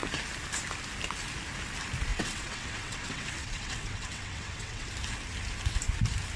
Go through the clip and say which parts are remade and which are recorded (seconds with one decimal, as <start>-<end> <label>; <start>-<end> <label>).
0.0-2.1 recorded; 2.1-4.9 remade; 4.9-6.4 recorded